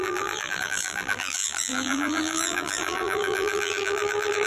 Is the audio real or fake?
fake